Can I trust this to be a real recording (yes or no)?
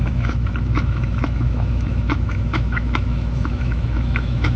no